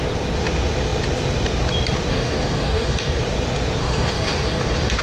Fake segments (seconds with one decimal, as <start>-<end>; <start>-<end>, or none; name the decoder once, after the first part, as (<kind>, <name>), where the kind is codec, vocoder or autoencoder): 2.1-3.2 (codec, DAC); 3.8-5.0